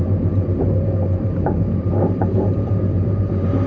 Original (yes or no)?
no